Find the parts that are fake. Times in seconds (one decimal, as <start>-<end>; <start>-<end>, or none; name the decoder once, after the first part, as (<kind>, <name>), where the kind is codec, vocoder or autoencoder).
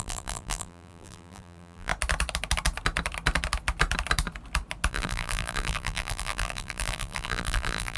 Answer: 0.0-1.9 (vocoder, BigVGAN v2); 4.9-8.0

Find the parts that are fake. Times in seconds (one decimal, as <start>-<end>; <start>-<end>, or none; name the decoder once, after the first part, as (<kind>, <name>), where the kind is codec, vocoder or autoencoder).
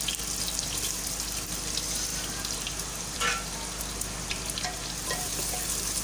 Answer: none